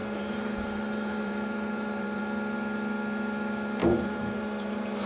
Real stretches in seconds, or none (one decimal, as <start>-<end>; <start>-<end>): 2.2-3.8